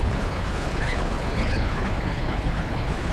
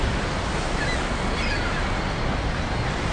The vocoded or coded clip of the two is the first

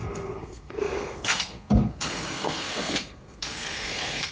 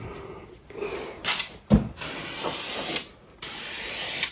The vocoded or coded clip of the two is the first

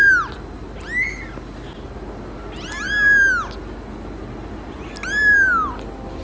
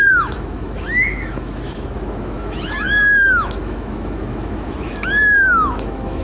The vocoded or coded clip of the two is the second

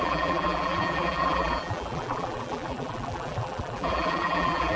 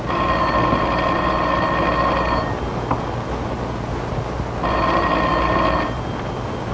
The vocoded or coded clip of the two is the first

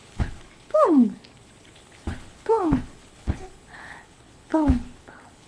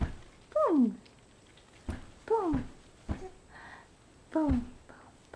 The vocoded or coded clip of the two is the first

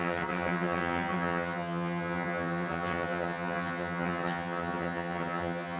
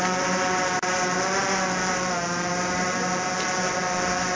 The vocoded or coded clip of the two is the first